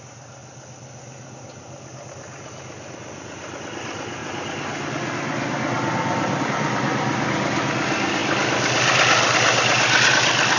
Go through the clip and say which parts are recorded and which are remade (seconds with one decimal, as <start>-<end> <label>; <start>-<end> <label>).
0.0-10.6 recorded